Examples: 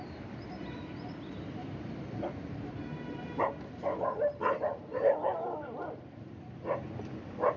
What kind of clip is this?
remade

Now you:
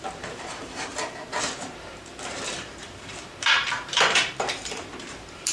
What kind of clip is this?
remade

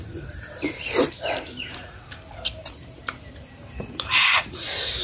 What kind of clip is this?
remade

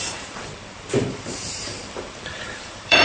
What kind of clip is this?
remade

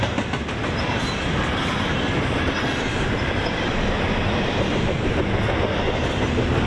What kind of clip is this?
recorded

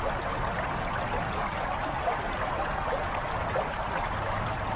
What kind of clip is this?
recorded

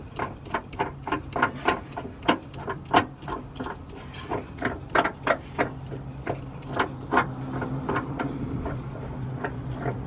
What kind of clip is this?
remade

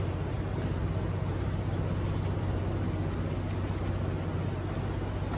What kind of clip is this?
recorded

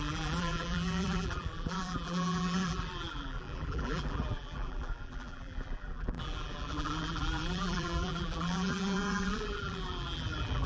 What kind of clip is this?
remade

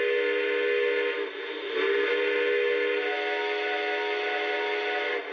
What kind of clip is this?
recorded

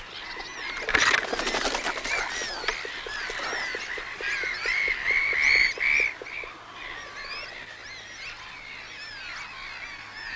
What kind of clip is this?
recorded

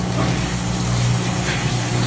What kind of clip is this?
recorded